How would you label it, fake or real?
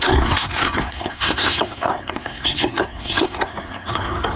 fake